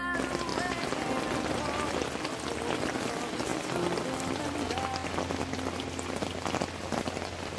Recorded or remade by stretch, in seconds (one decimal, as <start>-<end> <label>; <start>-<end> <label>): 0.0-7.6 recorded